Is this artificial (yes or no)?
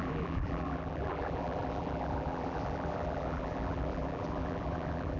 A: yes